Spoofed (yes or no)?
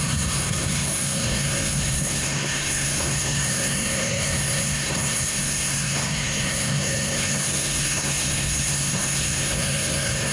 yes